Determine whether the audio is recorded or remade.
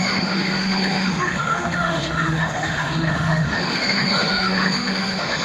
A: remade